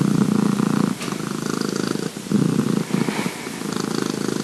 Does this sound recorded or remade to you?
recorded